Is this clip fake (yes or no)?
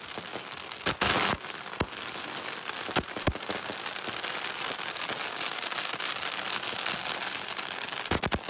no